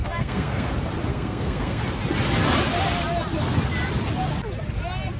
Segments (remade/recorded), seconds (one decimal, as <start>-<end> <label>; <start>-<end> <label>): 0.0-0.7 remade; 0.7-1.1 recorded; 1.1-1.8 remade; 1.8-5.2 recorded